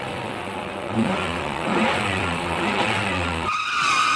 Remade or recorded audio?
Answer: remade